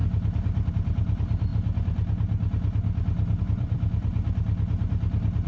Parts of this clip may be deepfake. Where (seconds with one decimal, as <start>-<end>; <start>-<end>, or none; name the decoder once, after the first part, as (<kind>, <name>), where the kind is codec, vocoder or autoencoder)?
0.7-1.5 (vocoder, BigVGAN v2); 3.4-4.1